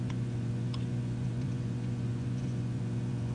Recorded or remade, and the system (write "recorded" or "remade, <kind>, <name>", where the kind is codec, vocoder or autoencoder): remade, vocoder, Vocos